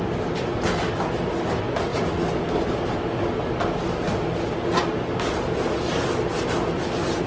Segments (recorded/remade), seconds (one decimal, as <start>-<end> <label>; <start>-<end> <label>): 0.0-7.3 recorded